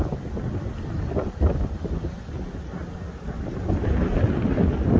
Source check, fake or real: real